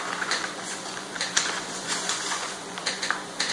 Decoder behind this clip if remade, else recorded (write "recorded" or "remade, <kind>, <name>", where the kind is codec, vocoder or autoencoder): remade, vocoder, Vocos